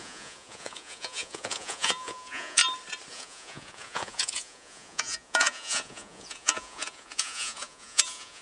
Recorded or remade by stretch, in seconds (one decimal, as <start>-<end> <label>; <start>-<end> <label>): 0.0-2.6 remade; 2.6-3.1 recorded; 3.1-8.4 remade

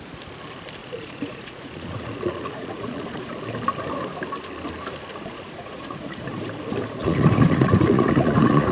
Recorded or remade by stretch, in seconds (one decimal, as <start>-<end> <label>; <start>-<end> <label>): 0.0-0.8 recorded; 0.8-3.3 remade; 3.3-5.1 recorded; 5.1-6.2 remade; 6.2-7.0 recorded; 7.0-8.7 remade

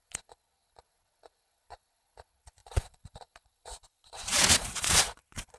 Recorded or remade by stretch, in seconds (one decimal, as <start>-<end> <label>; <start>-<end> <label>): 0.0-5.6 remade

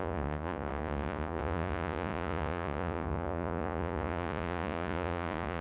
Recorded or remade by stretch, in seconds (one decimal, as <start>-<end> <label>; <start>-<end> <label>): 0.0-5.6 remade

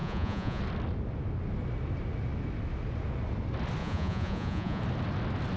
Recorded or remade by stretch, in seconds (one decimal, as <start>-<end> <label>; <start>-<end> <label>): 0.0-0.6 remade; 0.6-3.8 recorded; 3.8-4.8 remade; 4.8-5.6 recorded